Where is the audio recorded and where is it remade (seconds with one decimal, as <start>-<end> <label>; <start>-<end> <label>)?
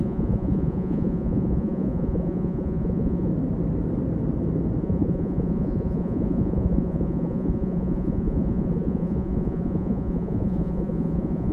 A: 0.0-3.3 remade; 3.3-4.8 recorded; 4.8-11.5 remade